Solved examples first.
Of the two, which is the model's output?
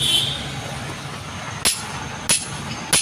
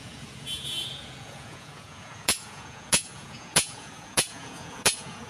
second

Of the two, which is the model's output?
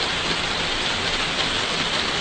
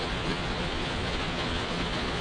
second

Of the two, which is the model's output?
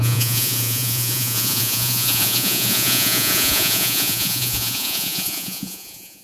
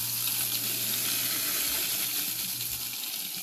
first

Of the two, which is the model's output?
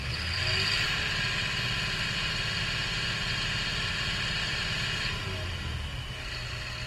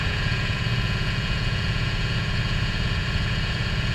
second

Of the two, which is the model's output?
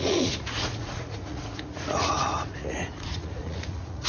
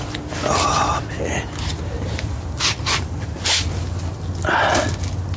first